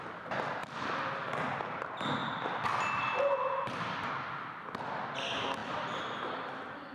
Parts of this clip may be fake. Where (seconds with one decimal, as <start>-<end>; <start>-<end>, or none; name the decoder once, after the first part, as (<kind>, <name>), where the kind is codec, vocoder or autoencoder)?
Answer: 0.6-1.1 (vocoder, BigVGAN v2); 2.2-4.1; 5.6-6.2